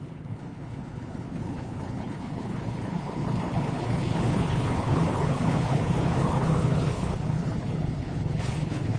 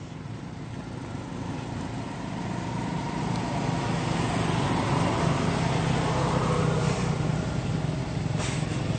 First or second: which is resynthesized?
first